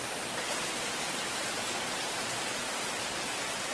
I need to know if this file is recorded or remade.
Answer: recorded